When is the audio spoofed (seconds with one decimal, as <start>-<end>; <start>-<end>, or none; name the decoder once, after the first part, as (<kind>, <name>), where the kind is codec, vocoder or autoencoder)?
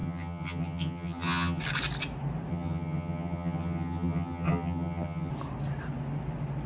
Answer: 0.0-1.6 (vocoder, HiFi-GAN); 2.5-5.3